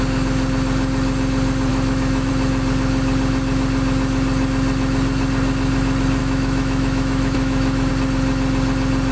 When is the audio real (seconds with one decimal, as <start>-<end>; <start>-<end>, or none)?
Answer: 0.0-1.7; 2.3-6.2; 7.9-9.1